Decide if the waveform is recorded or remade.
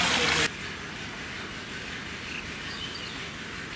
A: recorded